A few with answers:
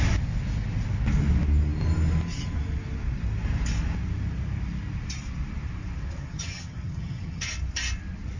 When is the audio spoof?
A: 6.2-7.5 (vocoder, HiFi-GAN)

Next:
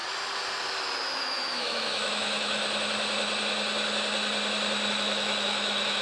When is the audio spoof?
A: 1.2-2.6 (autoencoder, DAC-VAE); 4.9-6.0

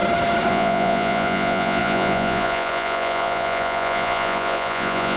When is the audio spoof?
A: 0.5-5.2 (vocoder, Vocos)

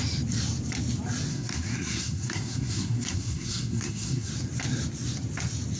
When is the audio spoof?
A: 1.3-4.3 (codec, SNAC)

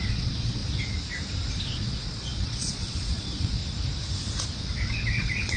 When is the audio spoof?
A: 0.0-0.6 (vocoder, Vocos); 1.7-3.6; 4.9-5.6